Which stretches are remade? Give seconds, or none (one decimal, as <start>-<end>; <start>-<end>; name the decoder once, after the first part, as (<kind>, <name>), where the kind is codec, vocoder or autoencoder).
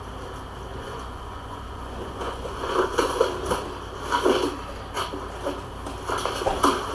0.7-3.2 (vocoder, Vocos)